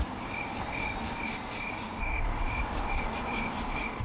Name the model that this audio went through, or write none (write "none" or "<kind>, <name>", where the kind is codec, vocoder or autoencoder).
vocoder, BigVGAN v2